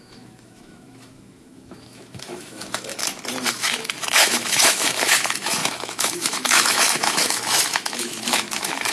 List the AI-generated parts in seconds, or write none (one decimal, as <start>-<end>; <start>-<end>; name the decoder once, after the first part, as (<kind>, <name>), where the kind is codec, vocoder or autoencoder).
0.0-3.0 (autoencoder, DAC-VAE); 3.5-8.9